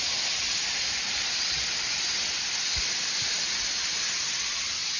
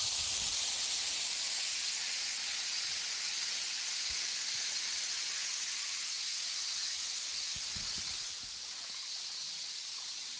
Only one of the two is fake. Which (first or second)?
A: second